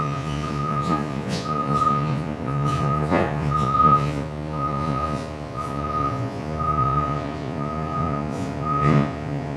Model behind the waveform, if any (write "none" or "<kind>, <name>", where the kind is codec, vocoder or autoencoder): vocoder, Vocos